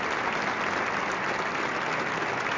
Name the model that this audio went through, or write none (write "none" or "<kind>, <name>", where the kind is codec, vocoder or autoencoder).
none